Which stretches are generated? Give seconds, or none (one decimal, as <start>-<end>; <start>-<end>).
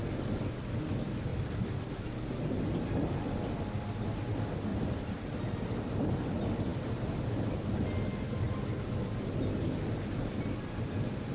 1.3-2.3; 4.7-6.1